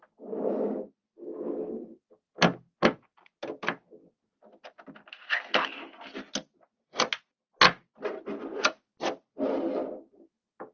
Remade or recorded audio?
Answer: recorded